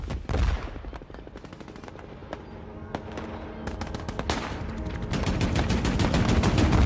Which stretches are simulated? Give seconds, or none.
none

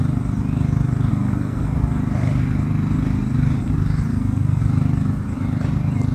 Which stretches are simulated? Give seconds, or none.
1.1-1.8 (codec, SNAC); 4.1-4.6

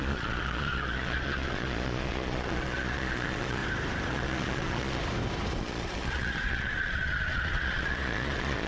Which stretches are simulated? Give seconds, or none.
0.0-3.6 (vocoder, Vocos); 4.1-5.0; 5.6-8.7

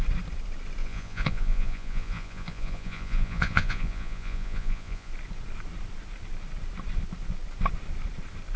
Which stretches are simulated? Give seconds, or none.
0.8-5.1 (vocoder, Vocos)

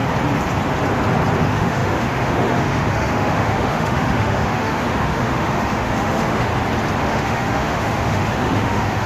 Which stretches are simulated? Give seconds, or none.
1.4-6.5 (autoencoder, DAC-VAE); 7.0-9.1

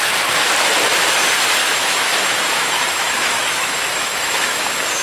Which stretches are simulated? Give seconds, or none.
1.6-4.6 (autoencoder, DAC-VAE)

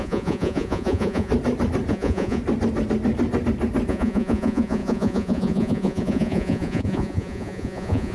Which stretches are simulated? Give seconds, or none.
0.0-1.3 (vocoder, Vocos); 1.9-2.4; 3.9-8.1

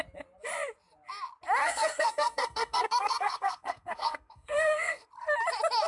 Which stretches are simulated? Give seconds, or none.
1.6-5.1 (codec, SNAC)